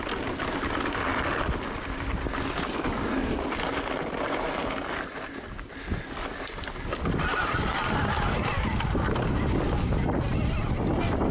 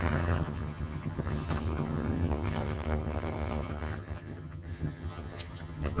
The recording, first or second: first